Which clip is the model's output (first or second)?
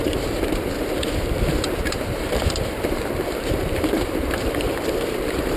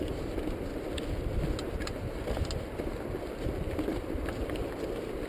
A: first